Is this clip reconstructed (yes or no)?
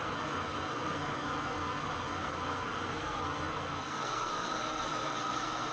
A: yes